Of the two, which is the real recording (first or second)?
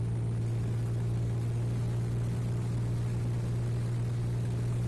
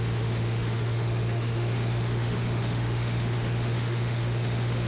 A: first